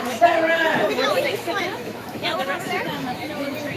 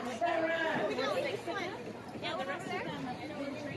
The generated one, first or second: first